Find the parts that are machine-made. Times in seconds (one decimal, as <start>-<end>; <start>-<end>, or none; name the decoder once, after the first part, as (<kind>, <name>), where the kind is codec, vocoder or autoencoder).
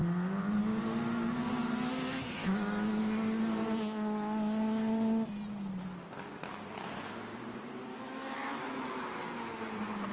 2.4-3.0 (autoencoder, DAC-VAE); 7.9-9.6